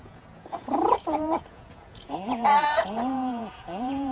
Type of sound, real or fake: fake